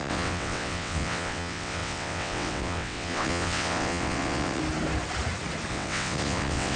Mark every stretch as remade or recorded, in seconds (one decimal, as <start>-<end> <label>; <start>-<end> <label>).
0.0-4.6 remade; 4.6-5.7 recorded; 5.7-6.8 remade